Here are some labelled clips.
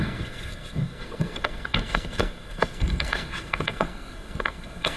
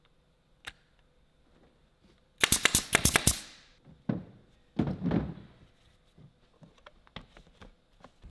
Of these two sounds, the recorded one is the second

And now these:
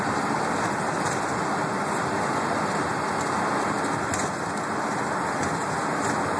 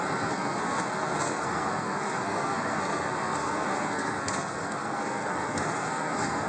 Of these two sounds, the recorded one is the first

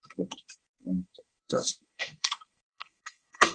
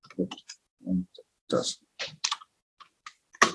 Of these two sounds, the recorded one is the second